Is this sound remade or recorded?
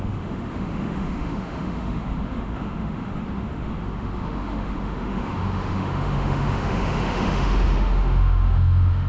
remade